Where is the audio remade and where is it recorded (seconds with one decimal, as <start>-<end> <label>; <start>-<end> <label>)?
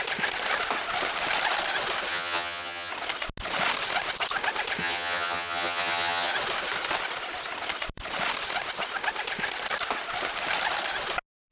0.0-2.1 recorded; 2.1-2.9 remade; 2.9-4.8 recorded; 4.8-6.3 remade; 6.3-11.5 recorded